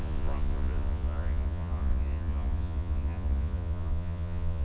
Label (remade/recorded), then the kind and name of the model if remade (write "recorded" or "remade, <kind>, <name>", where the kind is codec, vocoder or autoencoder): remade, vocoder, Vocos